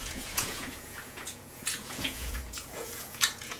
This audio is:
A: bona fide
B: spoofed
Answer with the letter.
B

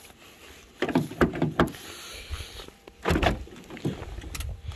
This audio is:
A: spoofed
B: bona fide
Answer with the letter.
B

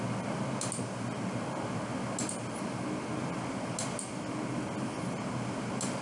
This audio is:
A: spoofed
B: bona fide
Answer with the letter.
B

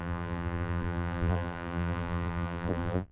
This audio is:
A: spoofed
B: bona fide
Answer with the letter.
A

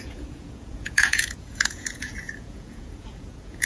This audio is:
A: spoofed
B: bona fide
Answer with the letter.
A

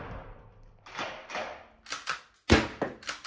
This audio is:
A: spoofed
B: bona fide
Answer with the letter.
B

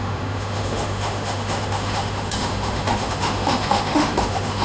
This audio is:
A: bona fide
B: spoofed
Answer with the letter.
B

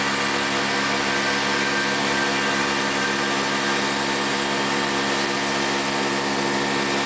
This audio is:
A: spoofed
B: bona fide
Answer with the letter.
B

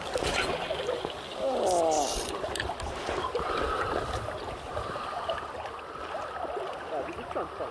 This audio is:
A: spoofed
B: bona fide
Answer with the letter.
B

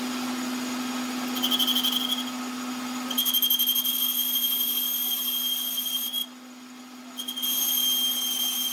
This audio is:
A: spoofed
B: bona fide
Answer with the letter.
B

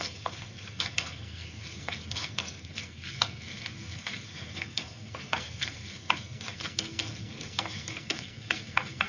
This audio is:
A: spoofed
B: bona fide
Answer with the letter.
A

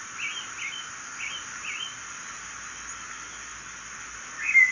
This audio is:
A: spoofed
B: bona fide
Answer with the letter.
B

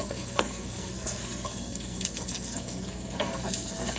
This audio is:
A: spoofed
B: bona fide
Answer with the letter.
A